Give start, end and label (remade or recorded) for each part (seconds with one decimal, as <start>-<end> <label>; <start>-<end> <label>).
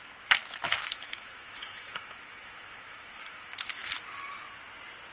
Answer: 0.0-0.8 recorded; 0.8-3.9 remade; 3.9-5.1 recorded